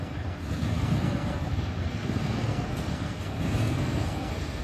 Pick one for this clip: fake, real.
fake